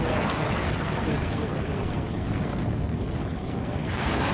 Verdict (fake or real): fake